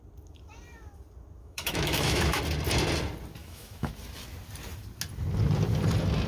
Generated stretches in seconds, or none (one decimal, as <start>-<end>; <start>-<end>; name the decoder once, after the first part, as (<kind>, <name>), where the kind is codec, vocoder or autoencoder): 1.4-2.4 (autoencoder, DAC-VAE); 3.4-3.9

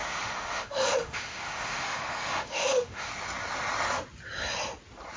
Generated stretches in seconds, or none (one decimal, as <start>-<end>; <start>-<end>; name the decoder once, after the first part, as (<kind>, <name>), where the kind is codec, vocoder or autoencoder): 0.0-3.1 (autoencoder, DAC-VAE)

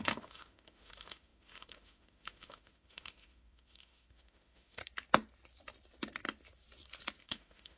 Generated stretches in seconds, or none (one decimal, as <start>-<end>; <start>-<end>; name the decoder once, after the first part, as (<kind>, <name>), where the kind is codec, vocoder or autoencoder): 0.0-4.8 (autoencoder, DAC-VAE); 7.2-7.8

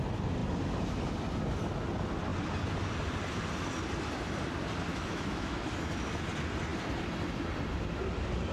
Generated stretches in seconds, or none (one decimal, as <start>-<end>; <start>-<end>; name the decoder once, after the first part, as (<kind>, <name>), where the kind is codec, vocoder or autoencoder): 4.9-5.6 (autoencoder, DAC-VAE)

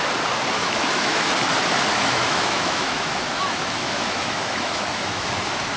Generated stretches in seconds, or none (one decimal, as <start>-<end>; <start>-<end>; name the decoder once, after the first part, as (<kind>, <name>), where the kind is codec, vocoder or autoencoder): 0.6-1.3 (autoencoder, DAC-VAE); 1.9-5.3

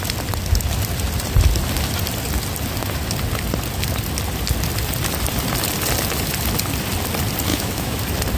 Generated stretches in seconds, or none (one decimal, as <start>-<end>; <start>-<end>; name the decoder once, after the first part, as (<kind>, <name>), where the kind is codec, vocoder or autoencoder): 7.5-8.0 (autoencoder, DAC-VAE)

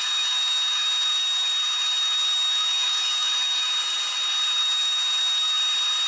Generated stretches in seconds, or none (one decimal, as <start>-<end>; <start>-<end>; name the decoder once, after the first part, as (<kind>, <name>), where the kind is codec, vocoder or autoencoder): 0.0-3.7 (autoencoder, DAC-VAE); 4.6-5.6